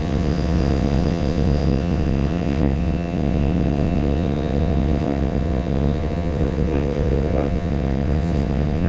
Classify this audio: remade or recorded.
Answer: remade